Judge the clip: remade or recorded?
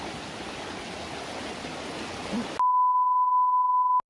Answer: recorded